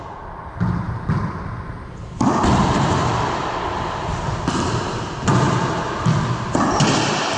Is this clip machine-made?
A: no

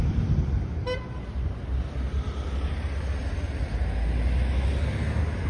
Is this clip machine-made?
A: no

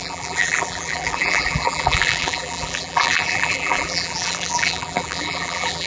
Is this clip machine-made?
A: yes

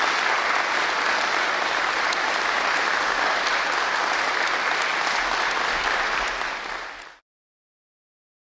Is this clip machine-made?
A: no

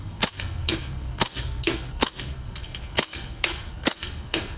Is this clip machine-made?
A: yes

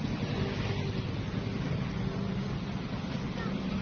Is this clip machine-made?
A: no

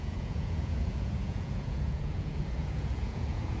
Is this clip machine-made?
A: yes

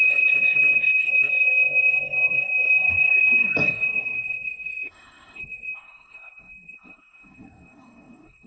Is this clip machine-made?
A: yes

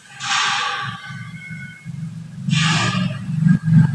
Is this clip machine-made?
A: no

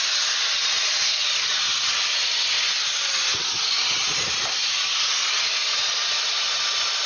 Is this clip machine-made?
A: no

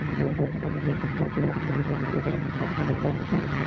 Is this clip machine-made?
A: yes